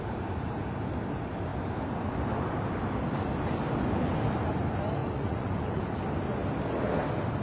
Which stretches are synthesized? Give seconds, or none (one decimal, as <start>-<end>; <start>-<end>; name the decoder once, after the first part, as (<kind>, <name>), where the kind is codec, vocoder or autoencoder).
5.0-5.8 (vocoder, Vocos)